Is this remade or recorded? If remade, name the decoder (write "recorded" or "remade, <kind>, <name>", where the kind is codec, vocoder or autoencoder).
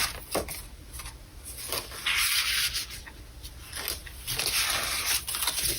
recorded